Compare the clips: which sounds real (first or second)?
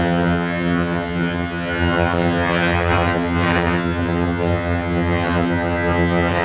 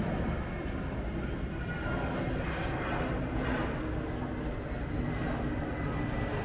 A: second